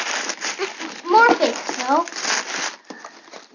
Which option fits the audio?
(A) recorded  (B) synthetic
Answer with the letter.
A